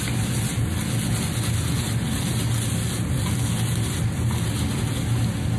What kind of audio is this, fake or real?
real